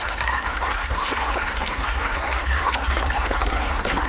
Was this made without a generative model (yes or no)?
no